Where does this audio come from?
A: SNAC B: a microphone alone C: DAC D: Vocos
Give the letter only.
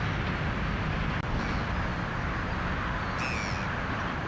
B